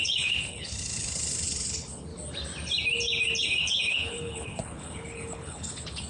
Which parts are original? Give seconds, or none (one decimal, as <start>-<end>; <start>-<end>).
2.1-3.4

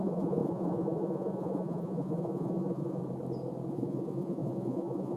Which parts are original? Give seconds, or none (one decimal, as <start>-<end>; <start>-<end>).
3.0-3.7